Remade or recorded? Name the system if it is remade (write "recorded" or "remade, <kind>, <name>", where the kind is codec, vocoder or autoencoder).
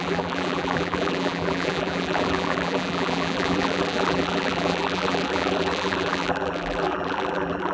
remade, vocoder, BigVGAN v2